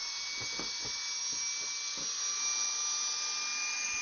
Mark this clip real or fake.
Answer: real